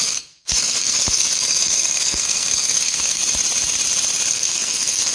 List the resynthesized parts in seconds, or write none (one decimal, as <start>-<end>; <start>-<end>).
0.0-3.2; 4.3-5.1